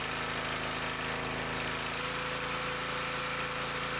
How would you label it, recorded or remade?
recorded